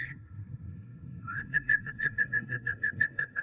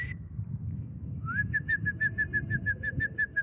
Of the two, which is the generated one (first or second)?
first